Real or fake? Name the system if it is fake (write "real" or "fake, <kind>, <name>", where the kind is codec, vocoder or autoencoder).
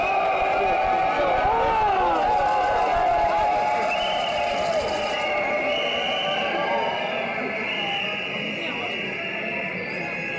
real